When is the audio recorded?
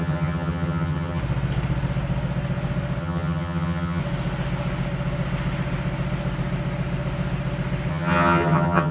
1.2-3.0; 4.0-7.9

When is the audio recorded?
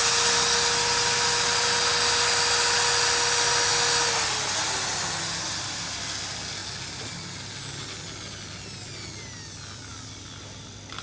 0.0-11.0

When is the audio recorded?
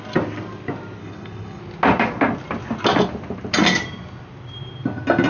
0.0-1.0; 1.6-5.3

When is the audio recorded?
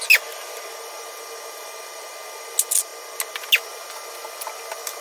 0.0-5.0